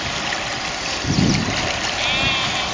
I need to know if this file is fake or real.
real